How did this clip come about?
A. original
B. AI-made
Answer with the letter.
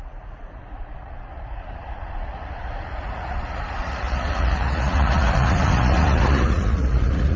B